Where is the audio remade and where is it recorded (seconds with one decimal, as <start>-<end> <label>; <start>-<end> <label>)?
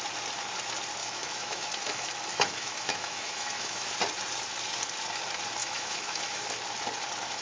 0.0-1.0 recorded; 1.0-3.9 remade; 3.9-5.6 recorded; 5.6-6.5 remade; 6.5-7.4 recorded